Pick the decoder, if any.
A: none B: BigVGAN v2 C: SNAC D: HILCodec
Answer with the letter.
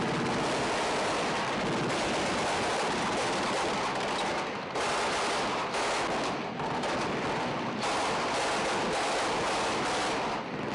A